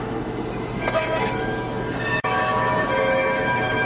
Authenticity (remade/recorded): remade